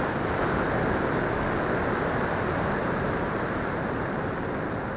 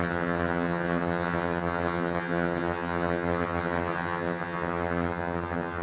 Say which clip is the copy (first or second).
second